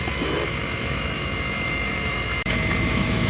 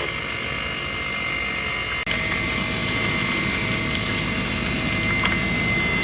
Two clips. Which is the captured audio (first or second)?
second